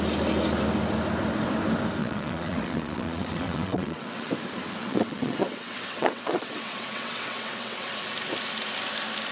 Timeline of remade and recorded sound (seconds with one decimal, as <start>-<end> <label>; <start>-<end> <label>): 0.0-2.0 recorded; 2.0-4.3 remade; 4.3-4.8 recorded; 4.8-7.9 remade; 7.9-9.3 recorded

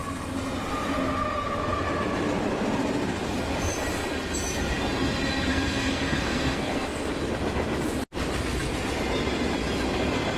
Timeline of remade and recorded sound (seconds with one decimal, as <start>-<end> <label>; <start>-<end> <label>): 0.0-5.5 recorded; 5.5-7.1 remade; 7.1-10.4 recorded

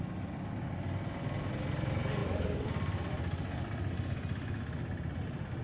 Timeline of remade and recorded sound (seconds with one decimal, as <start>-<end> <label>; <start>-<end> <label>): 0.0-5.6 recorded

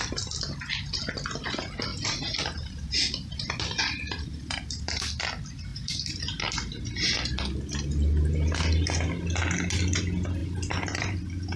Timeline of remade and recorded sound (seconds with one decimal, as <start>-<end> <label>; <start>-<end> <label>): 0.0-1.9 recorded; 1.9-5.2 remade; 5.2-5.7 recorded; 5.7-6.8 remade; 6.8-10.4 recorded; 10.4-11.2 remade; 11.2-11.6 recorded

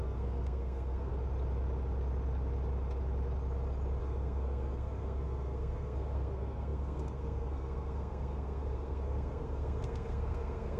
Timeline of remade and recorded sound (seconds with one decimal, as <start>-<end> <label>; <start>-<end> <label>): 0.0-1.1 remade; 1.1-4.0 recorded; 4.0-10.8 remade

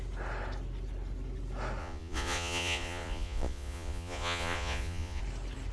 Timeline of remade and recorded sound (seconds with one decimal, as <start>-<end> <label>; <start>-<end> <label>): 0.0-1.8 recorded; 1.8-5.2 remade; 5.2-5.7 recorded

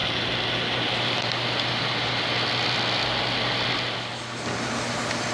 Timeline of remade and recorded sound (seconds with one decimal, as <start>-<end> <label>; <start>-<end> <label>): 0.0-5.3 recorded